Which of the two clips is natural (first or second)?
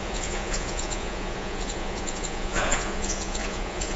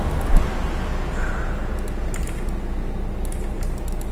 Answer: second